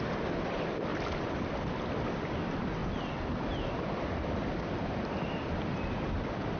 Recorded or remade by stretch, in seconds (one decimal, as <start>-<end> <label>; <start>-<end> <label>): 0.0-2.8 remade; 2.8-3.4 recorded; 3.4-6.6 remade